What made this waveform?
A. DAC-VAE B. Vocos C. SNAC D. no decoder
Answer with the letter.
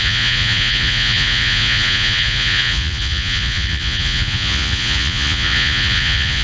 B